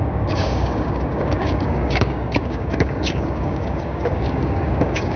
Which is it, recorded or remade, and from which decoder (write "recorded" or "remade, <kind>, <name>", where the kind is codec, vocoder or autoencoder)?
remade, codec, DAC